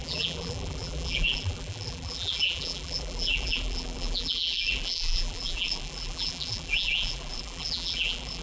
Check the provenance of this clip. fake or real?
fake